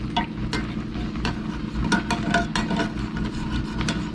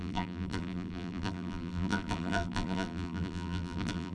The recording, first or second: first